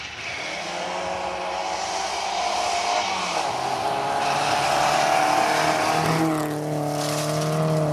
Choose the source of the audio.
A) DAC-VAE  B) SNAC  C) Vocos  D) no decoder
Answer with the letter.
D